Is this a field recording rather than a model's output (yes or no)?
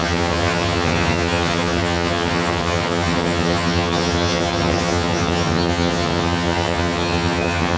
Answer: no